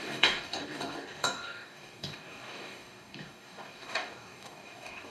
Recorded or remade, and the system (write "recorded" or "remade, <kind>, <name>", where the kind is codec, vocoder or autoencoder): remade, codec, DAC